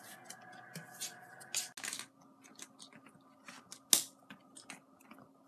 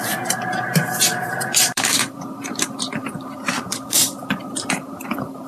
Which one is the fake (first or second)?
second